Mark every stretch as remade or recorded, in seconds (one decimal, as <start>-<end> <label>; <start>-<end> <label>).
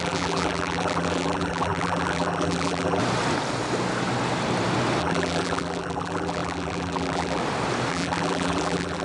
0.0-3.0 remade; 3.0-5.0 recorded; 5.0-7.4 remade; 7.4-7.9 recorded; 7.9-9.0 remade